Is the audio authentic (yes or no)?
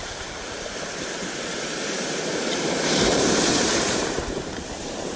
no